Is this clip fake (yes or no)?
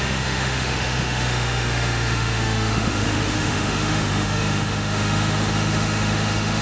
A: yes